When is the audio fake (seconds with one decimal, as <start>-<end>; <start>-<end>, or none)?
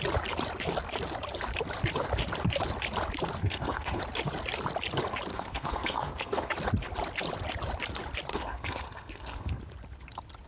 3.4-4.0; 5.3-6.5; 8.3-9.6